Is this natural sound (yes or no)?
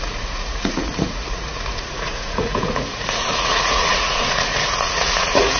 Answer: no